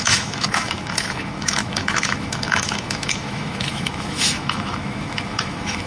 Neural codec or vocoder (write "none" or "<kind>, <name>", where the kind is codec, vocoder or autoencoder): autoencoder, DAC-VAE